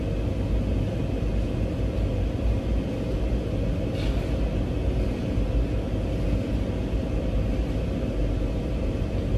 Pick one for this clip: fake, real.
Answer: real